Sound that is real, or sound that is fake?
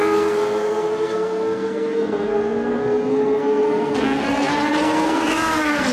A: fake